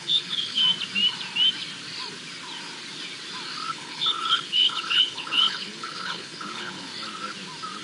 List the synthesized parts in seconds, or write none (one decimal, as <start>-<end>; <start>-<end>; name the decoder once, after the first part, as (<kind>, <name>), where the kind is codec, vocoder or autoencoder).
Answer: 0.0-0.6 (codec, HILCodec); 3.7-6.9